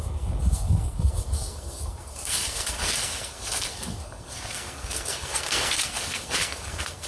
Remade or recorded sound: remade